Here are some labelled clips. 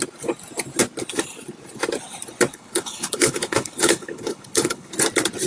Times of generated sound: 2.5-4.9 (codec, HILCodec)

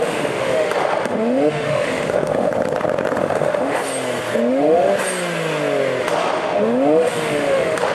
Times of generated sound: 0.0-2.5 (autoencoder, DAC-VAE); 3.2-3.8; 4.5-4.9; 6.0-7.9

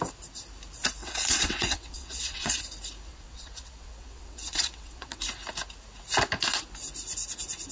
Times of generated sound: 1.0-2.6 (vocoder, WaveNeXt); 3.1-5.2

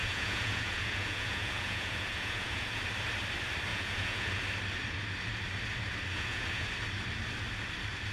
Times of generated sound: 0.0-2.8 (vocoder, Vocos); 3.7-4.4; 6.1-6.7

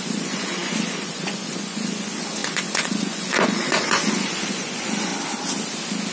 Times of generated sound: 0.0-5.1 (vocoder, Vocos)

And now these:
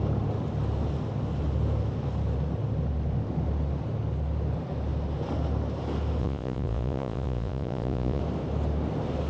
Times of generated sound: 6.2-8.2 (vocoder, Vocos)

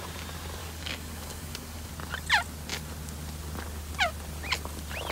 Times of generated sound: 0.6-1.9 (codec, DAC)

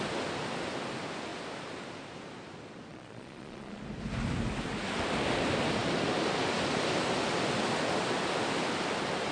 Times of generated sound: 2.9-3.8 (vocoder, Vocos)